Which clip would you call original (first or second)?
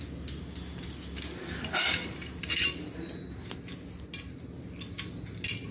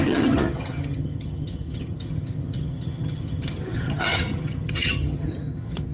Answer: first